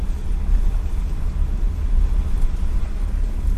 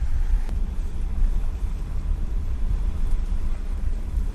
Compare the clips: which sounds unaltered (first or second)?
first